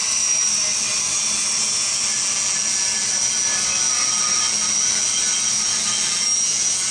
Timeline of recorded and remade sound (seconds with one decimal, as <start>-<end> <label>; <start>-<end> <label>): 0.0-6.9 recorded